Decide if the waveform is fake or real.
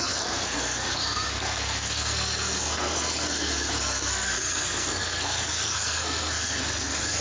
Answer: fake